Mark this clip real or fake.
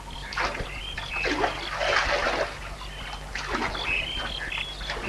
real